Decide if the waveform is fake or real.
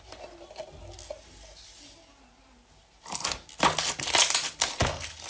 real